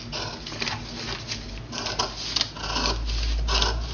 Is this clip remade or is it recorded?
recorded